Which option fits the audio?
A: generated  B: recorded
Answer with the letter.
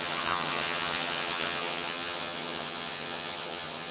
A